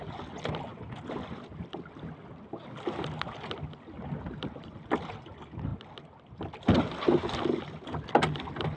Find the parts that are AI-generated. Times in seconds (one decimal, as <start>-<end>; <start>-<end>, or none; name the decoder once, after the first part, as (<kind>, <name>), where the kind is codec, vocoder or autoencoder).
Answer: none

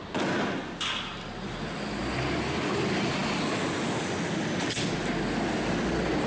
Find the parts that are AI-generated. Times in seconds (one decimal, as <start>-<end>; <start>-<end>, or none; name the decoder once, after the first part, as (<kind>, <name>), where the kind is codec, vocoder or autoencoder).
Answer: none

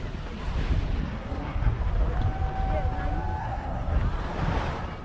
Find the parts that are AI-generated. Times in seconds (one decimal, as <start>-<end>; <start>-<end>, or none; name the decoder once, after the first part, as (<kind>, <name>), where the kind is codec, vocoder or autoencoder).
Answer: 1.0-1.8 (codec, SNAC); 3.4-4.0

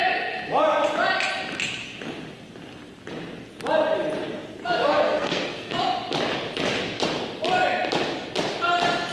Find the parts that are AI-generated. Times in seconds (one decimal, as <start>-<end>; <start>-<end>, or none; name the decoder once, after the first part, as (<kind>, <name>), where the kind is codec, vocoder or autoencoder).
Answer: 4.6-5.8 (codec, SNAC)

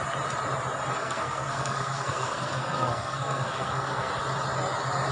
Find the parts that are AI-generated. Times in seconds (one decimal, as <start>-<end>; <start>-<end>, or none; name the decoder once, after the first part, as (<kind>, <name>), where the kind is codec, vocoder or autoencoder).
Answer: 1.0-4.1 (codec, SNAC)

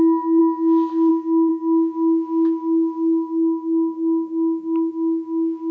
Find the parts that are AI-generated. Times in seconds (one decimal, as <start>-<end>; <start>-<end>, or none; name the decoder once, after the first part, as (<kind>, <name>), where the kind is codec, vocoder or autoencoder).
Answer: none

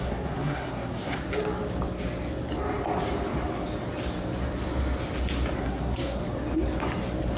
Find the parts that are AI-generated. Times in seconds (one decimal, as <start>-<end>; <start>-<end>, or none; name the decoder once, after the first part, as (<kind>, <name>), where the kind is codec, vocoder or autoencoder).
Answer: 0.0-1.2 (codec, SNAC); 5.6-6.2

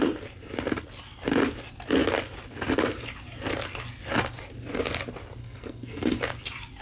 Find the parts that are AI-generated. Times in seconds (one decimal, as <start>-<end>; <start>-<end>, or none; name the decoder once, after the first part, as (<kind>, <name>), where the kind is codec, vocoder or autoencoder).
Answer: 5.4-6.2 (codec, SNAC)